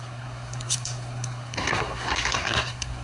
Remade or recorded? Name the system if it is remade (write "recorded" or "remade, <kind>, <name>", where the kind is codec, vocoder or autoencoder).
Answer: remade, codec, SNAC